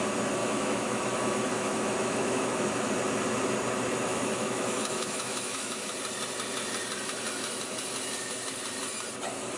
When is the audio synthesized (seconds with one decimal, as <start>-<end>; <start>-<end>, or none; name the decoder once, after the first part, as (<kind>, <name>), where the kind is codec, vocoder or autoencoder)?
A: 0.4-2.9 (autoencoder, DAC-VAE); 4.1-5.9